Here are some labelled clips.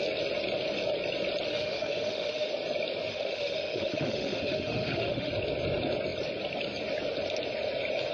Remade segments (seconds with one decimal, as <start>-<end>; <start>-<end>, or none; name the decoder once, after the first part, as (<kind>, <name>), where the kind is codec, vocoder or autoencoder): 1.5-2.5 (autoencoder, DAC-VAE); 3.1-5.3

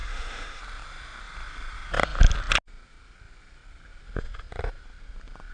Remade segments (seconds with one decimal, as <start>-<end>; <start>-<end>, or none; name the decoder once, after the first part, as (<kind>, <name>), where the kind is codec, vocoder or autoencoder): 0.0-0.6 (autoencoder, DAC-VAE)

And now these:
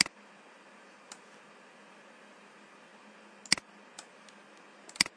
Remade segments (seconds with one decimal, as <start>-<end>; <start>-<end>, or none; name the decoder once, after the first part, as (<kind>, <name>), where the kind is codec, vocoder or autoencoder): none